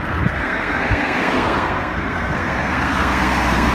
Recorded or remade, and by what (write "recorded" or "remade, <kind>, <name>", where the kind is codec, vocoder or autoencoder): remade, codec, SNAC